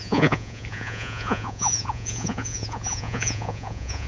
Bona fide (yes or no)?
no